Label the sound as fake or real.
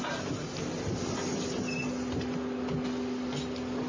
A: real